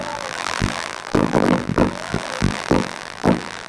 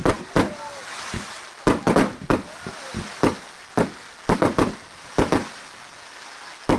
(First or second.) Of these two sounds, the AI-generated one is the first